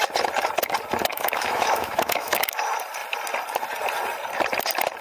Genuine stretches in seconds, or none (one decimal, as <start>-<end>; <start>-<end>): 0.0-1.1; 2.6-5.0

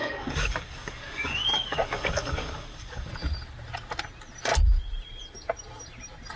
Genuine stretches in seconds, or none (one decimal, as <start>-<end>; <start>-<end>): 3.1-6.4